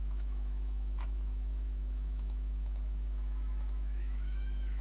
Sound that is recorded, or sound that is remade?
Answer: remade